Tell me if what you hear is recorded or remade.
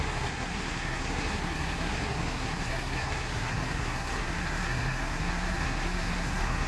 remade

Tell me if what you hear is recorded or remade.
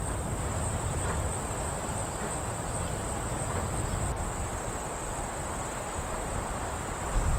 recorded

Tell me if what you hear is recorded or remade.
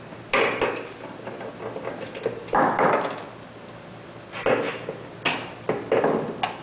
recorded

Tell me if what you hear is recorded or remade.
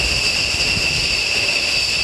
recorded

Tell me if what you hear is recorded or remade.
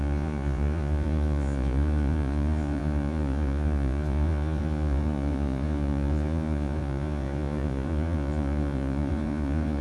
remade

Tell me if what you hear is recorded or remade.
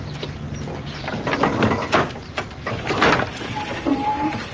remade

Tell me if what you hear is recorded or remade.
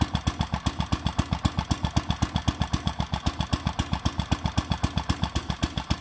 recorded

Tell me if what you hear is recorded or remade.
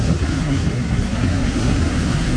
remade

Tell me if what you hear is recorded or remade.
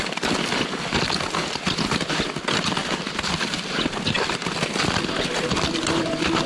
recorded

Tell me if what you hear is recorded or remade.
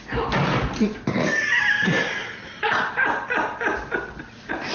recorded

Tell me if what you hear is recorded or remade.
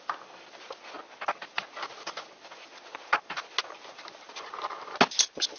recorded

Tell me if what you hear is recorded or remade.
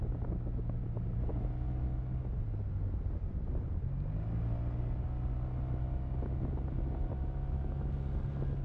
recorded